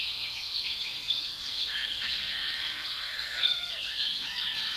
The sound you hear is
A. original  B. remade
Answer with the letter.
B